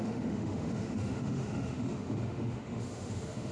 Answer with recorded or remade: remade